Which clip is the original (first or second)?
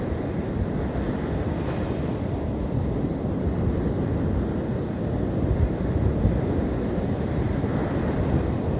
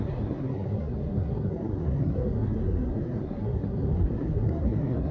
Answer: first